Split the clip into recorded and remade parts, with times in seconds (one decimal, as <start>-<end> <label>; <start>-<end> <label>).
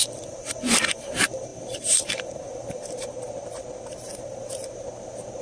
0.0-5.4 remade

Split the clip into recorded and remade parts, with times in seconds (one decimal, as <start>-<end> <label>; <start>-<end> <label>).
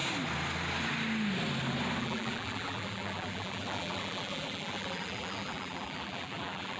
0.0-2.0 recorded; 2.0-6.8 remade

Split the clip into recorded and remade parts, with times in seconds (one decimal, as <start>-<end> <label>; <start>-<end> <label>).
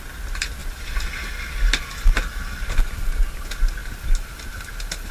0.0-5.1 recorded